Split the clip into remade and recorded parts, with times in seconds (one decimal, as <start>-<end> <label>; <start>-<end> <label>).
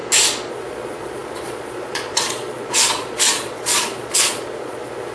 0.0-0.5 recorded; 0.5-5.1 remade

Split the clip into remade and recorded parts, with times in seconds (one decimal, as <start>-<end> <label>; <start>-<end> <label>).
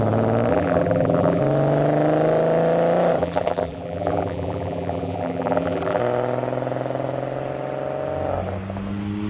0.0-0.5 recorded; 0.5-1.4 remade; 1.4-3.2 recorded; 3.2-6.0 remade; 6.0-9.3 recorded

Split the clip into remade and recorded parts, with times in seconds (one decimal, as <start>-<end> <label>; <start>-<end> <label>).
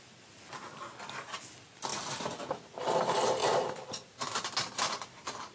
0.0-5.5 recorded